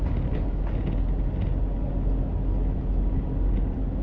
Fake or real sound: real